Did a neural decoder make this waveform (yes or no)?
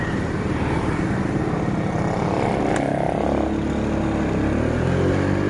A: no